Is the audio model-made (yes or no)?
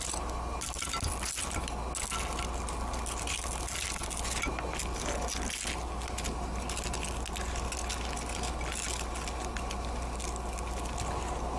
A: no